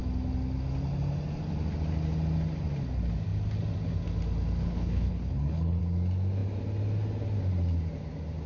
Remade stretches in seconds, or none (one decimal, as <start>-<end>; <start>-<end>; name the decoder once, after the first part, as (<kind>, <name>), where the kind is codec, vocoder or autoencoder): 4.6-5.8 (codec, HILCodec)